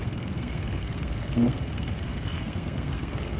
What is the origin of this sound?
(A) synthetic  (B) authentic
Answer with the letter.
A